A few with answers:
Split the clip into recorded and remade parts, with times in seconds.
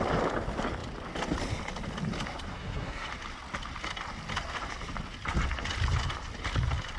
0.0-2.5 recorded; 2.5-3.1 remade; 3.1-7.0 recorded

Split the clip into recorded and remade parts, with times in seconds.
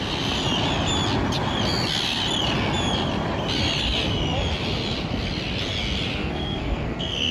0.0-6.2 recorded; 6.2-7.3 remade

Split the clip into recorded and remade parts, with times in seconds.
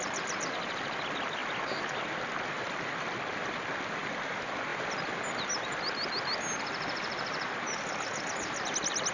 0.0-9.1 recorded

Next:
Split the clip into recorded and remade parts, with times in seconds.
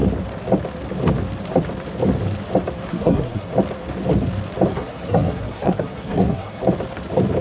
0.0-2.9 recorded; 2.9-3.5 remade; 3.5-4.7 recorded; 4.7-6.6 remade; 6.6-7.4 recorded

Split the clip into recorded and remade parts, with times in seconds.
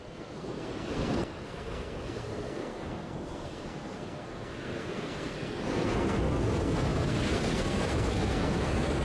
0.0-9.0 remade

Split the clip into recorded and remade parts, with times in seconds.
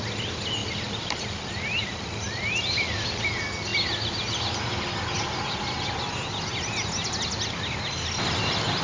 0.0-8.8 recorded